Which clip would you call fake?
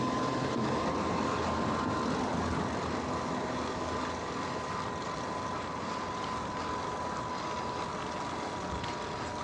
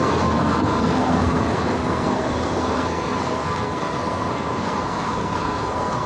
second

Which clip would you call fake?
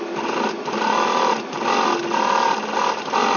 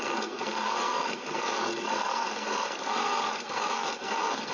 second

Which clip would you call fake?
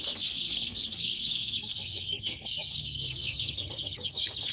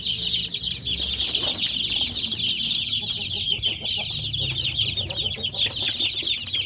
first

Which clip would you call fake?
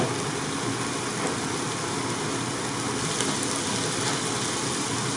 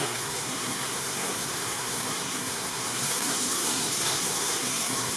second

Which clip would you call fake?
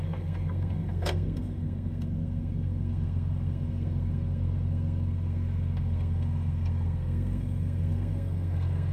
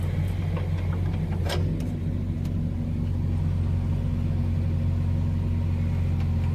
first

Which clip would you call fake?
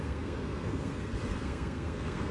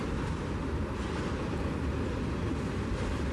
first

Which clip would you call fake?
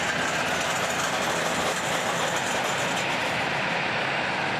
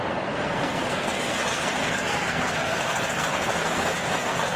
second